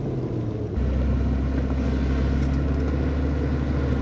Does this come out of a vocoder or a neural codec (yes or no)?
no